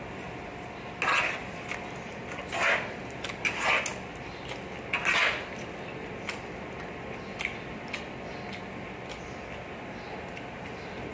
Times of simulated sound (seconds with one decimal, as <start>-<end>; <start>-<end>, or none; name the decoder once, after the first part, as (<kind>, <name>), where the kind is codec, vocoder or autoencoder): none